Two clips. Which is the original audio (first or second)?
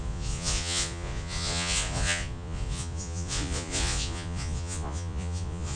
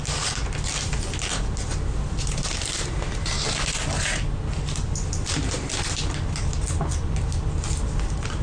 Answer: second